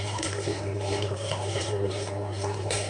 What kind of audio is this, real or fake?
fake